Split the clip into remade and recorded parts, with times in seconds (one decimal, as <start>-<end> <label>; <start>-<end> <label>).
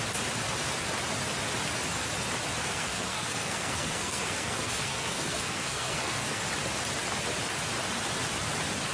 0.0-2.6 recorded; 2.6-6.4 remade; 6.4-8.9 recorded